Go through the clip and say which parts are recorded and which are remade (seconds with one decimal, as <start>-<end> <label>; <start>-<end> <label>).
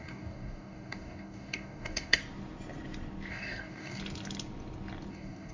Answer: 0.0-2.2 remade; 2.2-3.3 recorded; 3.3-4.0 remade; 4.0-5.1 recorded; 5.1-5.5 remade